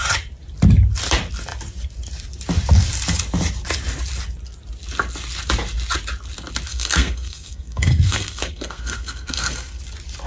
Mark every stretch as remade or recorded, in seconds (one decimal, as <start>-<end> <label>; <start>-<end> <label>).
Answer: 0.0-6.7 recorded; 6.7-9.8 remade; 9.8-10.3 recorded